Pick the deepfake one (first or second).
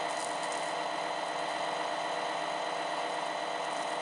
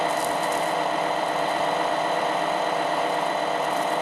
second